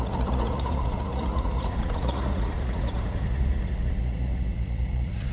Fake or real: fake